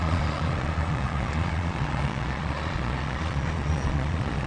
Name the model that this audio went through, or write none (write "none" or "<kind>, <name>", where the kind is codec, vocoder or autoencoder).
vocoder, Vocos